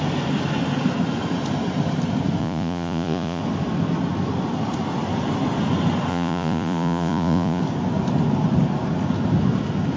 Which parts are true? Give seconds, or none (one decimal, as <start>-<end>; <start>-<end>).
0.0-2.4; 3.4-6.1; 7.6-10.0